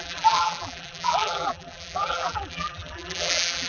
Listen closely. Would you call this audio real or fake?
fake